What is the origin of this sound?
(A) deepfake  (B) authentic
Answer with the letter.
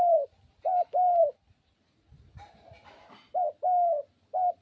B